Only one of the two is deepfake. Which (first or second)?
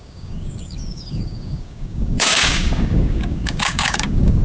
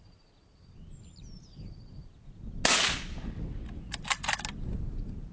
first